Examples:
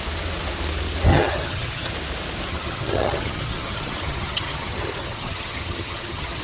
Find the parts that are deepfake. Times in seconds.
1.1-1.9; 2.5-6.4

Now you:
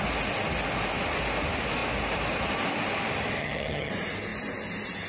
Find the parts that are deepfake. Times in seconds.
3.4-3.9

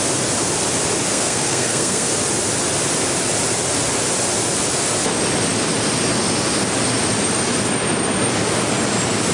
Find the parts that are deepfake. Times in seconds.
1.1-2.1

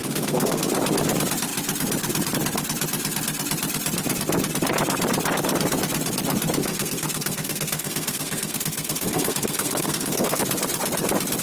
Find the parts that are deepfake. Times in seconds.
0.0-0.6; 6.6-10.4